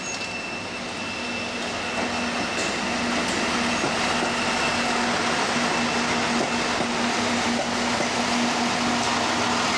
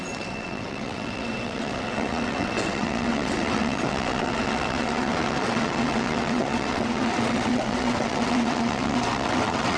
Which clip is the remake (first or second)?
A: second